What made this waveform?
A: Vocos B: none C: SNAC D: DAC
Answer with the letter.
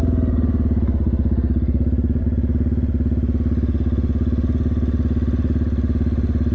B